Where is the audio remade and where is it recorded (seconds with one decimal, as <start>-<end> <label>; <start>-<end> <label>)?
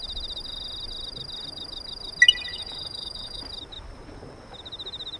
0.0-2.5 recorded; 2.5-3.4 remade; 3.4-5.2 recorded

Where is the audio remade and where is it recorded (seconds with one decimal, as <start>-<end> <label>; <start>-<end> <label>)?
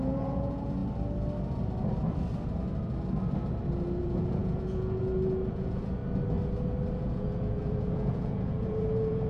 0.0-0.8 remade; 0.8-4.0 recorded; 4.0-6.0 remade; 6.0-6.9 recorded; 6.9-9.3 remade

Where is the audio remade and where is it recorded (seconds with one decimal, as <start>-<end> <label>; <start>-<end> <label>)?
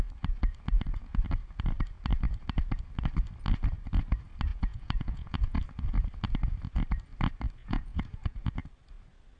0.0-4.5 recorded; 4.5-5.6 remade; 5.6-7.6 recorded; 7.6-8.5 remade; 8.5-9.4 recorded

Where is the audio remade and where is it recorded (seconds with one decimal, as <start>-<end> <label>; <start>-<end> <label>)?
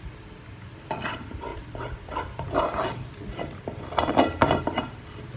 0.0-1.5 recorded; 1.5-4.6 remade; 4.6-5.4 recorded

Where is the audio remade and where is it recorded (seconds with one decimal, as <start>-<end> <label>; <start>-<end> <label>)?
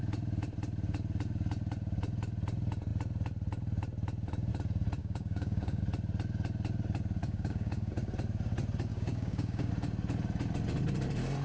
0.0-5.0 recorded; 5.0-5.8 remade; 5.8-7.2 recorded; 7.2-7.9 remade; 7.9-8.9 recorded; 8.9-9.7 remade; 9.7-11.4 recorded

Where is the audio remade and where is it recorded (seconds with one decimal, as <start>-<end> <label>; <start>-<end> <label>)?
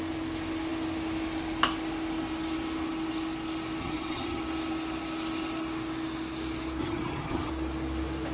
0.0-3.8 recorded; 3.8-4.4 remade; 4.4-6.8 recorded; 6.8-7.5 remade; 7.5-8.3 recorded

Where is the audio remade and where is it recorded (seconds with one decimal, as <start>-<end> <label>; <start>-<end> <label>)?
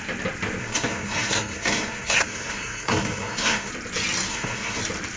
0.0-0.6 recorded; 0.6-3.7 remade; 3.7-4.3 recorded; 4.3-4.8 remade; 4.8-5.2 recorded